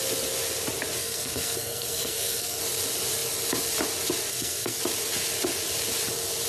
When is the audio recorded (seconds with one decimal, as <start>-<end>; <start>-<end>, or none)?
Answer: 0.0-1.0; 2.6-4.3; 4.8-6.5